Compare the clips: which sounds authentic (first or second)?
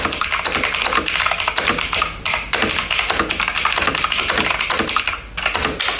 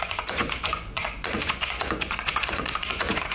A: first